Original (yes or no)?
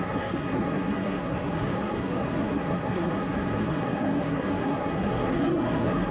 no